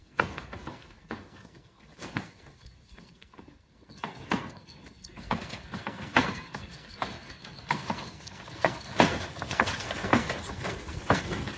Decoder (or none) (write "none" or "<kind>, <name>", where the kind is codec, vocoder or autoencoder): codec, SNAC